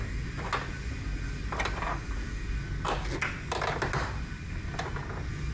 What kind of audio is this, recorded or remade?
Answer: recorded